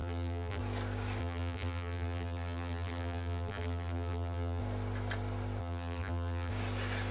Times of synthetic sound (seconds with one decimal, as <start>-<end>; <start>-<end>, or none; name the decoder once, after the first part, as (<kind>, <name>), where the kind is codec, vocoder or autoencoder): 0.0-0.6 (vocoder, BigVGAN v2); 1.2-4.6; 5.6-6.5